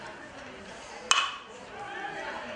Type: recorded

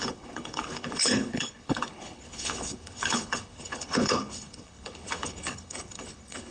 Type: remade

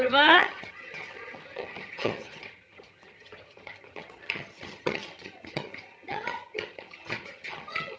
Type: remade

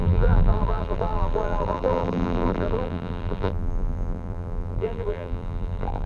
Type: remade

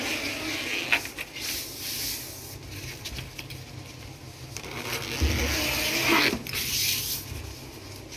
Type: recorded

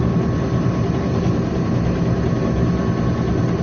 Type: recorded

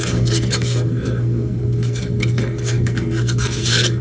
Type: remade